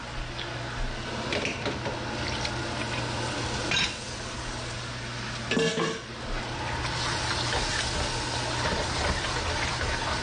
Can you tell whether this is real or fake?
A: real